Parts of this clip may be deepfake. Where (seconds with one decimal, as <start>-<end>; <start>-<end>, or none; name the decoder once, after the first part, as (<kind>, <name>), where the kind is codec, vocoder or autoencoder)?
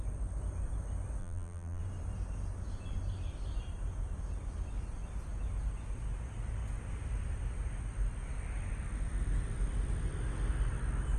1.2-1.8 (vocoder, BigVGAN v2)